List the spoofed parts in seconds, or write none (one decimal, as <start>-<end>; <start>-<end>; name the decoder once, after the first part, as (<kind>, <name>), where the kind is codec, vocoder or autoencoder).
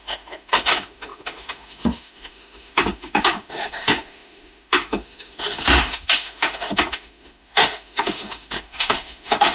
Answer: 0.0-9.5 (autoencoder, DAC-VAE)